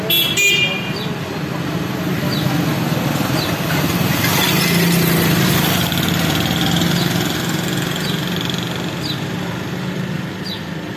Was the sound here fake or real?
real